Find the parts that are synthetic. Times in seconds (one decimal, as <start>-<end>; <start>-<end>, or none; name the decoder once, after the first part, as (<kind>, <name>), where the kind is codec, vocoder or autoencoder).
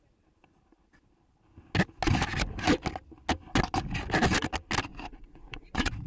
4.9-6.1 (vocoder, Vocos)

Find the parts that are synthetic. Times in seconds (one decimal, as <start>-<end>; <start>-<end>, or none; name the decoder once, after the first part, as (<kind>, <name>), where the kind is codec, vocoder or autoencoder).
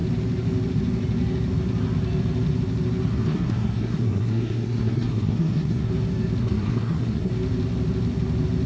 3.1-5.9 (codec, SNAC); 6.4-7.3